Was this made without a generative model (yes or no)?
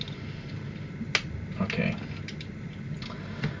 yes